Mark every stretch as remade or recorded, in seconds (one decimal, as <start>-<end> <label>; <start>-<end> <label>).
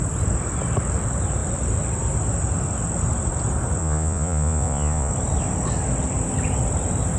0.0-3.8 recorded; 3.8-5.1 remade; 5.1-7.2 recorded